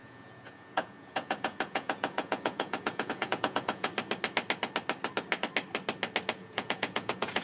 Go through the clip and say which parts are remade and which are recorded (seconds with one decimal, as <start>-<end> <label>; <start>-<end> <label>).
0.0-3.9 remade; 3.9-6.3 recorded; 6.3-7.4 remade